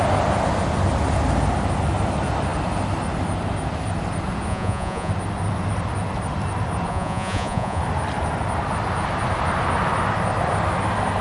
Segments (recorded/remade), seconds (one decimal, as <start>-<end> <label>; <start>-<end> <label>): 0.0-4.5 recorded; 4.5-5.1 remade; 5.1-6.9 recorded; 6.9-7.8 remade; 7.8-11.2 recorded